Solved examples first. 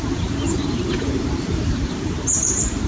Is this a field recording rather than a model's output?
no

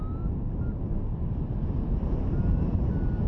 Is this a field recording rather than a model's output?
yes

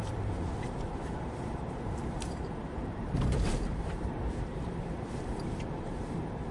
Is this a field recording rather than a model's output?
no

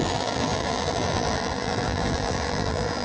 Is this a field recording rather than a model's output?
no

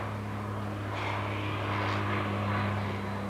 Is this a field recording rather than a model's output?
yes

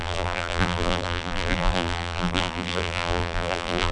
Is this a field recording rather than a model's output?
no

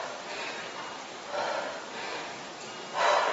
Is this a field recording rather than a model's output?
yes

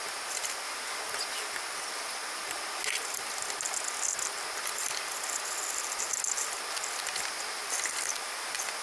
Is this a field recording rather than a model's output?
yes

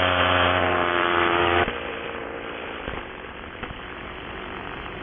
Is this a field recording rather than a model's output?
no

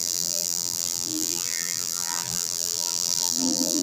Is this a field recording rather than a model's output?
no